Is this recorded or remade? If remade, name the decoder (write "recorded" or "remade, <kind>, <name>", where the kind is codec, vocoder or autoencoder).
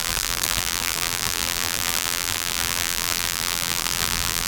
remade, vocoder, BigVGAN v2